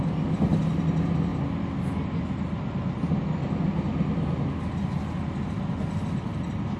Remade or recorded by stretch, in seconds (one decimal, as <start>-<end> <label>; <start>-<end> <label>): 0.0-6.8 recorded